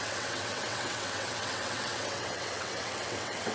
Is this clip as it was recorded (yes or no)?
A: no